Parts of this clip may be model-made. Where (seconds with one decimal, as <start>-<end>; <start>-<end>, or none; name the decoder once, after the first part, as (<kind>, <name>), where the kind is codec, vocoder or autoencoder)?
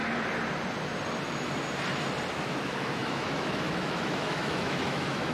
2.3-5.3 (autoencoder, DAC-VAE)